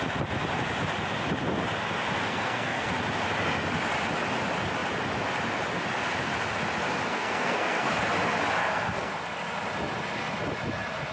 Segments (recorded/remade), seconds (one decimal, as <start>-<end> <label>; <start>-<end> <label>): 0.0-2.2 recorded; 2.2-2.9 remade; 2.9-7.1 recorded; 7.1-8.0 remade; 8.0-8.6 recorded; 8.6-9.1 remade; 9.1-11.1 recorded